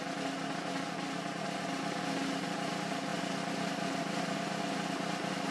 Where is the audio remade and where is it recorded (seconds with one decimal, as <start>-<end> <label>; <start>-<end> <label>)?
0.0-5.5 recorded